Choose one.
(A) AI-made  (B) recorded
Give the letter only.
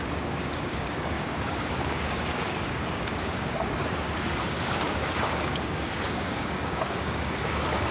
A